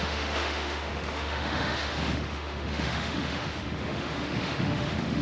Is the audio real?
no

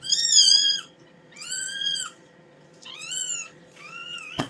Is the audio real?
no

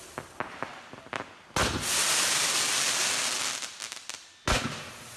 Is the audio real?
yes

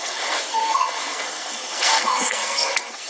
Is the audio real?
no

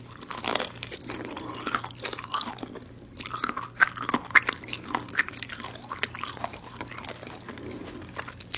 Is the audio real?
yes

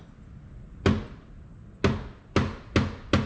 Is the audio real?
yes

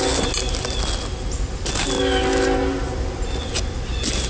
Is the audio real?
yes